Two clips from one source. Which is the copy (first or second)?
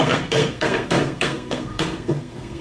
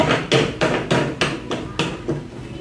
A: first